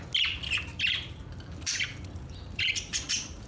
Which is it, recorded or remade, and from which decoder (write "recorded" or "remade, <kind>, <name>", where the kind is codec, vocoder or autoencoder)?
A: remade, vocoder, BigVGAN v2